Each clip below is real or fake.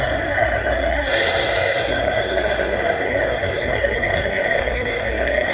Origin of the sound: fake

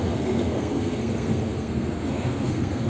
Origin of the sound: fake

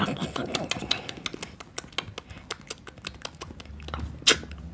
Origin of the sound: real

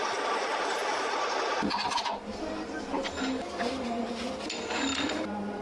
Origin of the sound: real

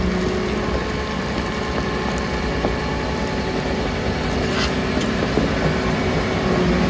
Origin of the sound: real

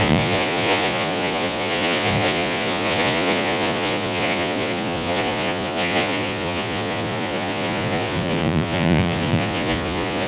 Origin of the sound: fake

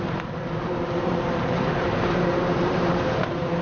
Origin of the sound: fake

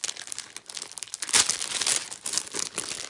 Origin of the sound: real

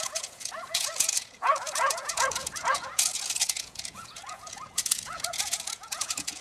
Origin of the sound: fake